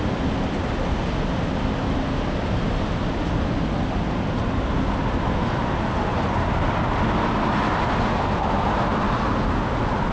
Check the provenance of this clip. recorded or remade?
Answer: recorded